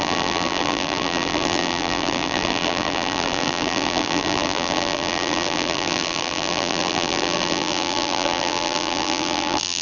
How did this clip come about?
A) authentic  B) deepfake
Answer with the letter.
B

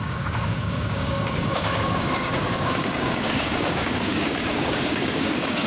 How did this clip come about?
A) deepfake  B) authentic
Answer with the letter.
A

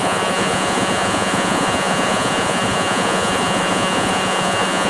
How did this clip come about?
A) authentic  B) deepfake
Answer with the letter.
B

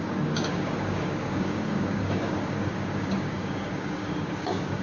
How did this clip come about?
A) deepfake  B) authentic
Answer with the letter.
A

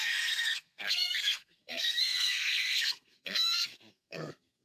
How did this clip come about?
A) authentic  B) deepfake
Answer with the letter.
B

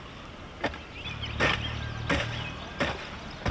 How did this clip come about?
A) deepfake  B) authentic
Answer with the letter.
B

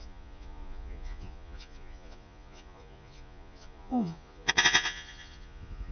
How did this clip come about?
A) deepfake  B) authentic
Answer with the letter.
A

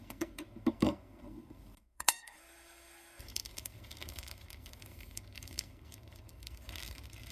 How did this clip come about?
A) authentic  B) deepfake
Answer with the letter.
B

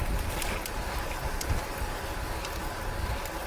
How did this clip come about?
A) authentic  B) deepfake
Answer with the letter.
A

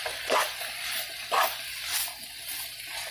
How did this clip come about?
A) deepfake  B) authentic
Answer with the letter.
B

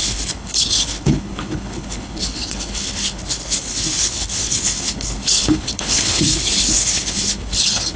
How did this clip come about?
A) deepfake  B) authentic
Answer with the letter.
A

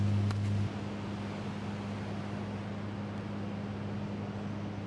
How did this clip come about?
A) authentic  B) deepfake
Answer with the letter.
A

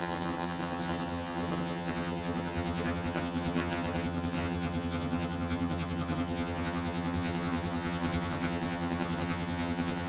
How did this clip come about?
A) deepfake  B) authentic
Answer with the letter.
A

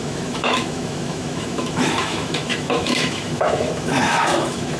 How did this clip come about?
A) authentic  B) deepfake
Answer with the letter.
B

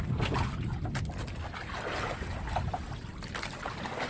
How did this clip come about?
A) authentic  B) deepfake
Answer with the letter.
A